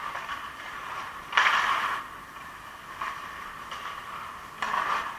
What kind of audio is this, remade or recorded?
recorded